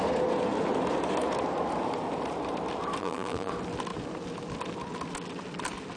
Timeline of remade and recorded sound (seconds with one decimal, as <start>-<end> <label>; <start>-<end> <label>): 0.0-3.0 recorded; 3.0-3.5 remade; 3.5-6.0 recorded